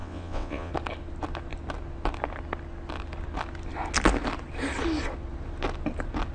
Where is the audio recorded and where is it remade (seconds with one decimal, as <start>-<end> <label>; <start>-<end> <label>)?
0.0-0.7 remade; 0.7-6.3 recorded